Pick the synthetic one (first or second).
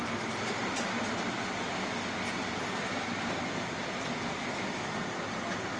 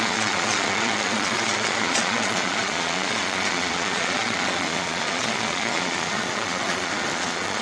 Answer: second